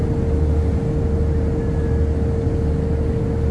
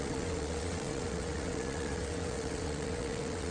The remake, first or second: second